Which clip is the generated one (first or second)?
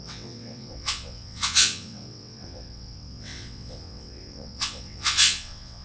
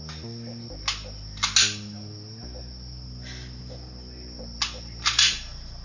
first